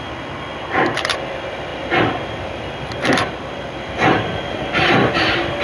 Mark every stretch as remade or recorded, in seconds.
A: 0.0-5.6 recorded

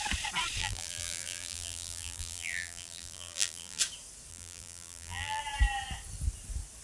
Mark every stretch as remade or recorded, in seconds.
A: 0.0-0.6 recorded; 0.6-3.8 remade; 3.8-4.3 recorded; 4.3-5.4 remade; 5.4-6.8 recorded

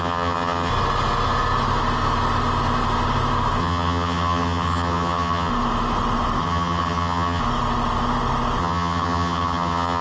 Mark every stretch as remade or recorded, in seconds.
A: 0.0-0.7 remade; 0.7-3.6 recorded; 3.6-5.5 remade; 5.5-6.4 recorded; 6.4-7.4 remade; 7.4-8.6 recorded; 8.6-10.0 remade

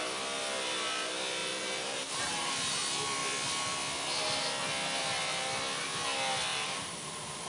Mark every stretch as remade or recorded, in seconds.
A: 0.0-1.4 recorded; 1.4-2.5 remade; 2.5-6.5 recorded; 6.5-7.5 remade

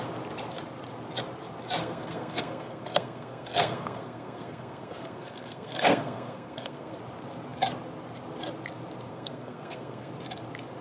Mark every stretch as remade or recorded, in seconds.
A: 0.0-1.8 recorded; 1.8-7.0 remade; 7.0-9.1 recorded; 9.1-10.1 remade; 10.1-10.8 recorded

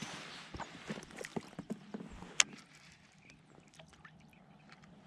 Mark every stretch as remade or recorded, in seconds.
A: 0.0-5.1 recorded